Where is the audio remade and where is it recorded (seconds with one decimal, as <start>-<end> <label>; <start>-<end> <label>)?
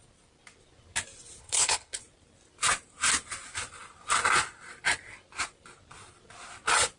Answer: 0.0-1.4 recorded; 1.4-2.0 remade; 2.0-7.0 recorded